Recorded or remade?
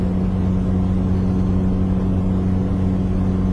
recorded